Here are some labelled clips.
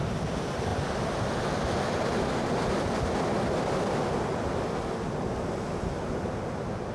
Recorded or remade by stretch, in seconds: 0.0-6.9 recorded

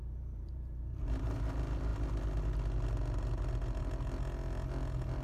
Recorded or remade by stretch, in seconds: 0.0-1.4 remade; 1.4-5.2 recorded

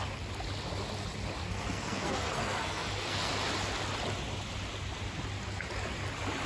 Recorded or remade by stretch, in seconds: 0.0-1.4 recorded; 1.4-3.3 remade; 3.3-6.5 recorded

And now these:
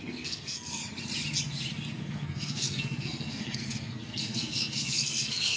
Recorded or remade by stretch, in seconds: 0.0-0.8 remade; 0.8-2.0 recorded; 2.0-5.6 remade